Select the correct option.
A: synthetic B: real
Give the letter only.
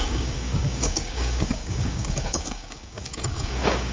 A